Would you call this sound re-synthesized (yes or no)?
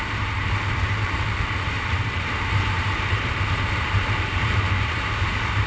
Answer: yes